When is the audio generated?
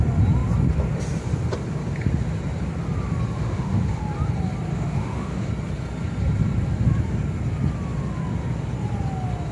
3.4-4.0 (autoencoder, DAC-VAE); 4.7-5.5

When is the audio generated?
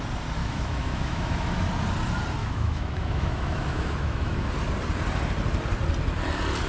0.4-1.6 (autoencoder, DAC-VAE); 2.4-4.5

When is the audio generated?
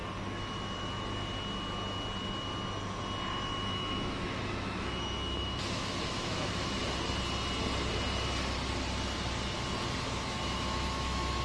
3.3-6.8 (autoencoder, DAC-VAE); 10.0-11.4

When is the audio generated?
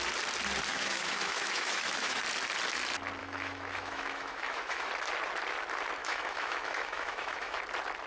0.7-2.2 (autoencoder, DAC-VAE); 3.2-4.9; 6.0-7.6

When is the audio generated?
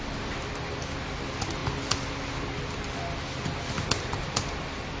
none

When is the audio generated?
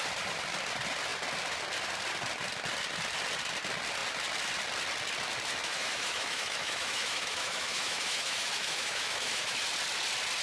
5.6-9.6 (autoencoder, DAC-VAE)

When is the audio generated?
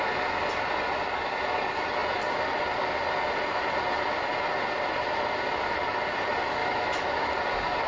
6.6-7.3 (autoencoder, DAC-VAE)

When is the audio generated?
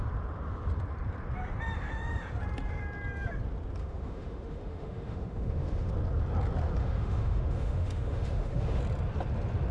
3.8-5.9 (autoencoder, DAC-VAE); 6.8-8.8